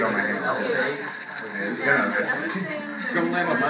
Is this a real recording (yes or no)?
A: yes